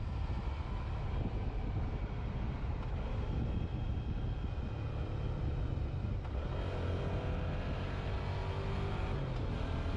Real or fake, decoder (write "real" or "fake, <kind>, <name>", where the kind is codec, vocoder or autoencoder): real